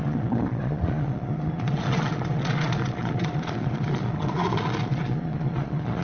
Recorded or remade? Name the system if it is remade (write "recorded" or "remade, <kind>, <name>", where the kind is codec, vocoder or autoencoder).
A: remade, vocoder, Vocos